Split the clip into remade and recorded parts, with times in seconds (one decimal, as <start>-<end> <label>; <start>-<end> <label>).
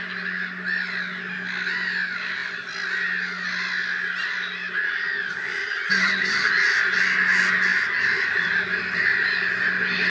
0.0-5.6 recorded; 5.6-6.5 remade; 6.5-10.1 recorded